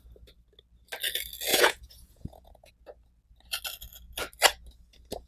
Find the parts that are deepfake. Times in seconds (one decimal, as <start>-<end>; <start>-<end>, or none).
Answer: 1.5-2.7